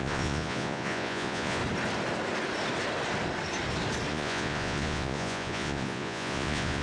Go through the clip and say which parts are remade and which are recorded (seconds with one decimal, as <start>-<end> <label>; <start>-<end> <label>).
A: 0.0-1.6 remade; 1.6-4.1 recorded; 4.1-6.8 remade